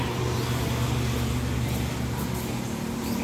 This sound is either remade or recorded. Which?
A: recorded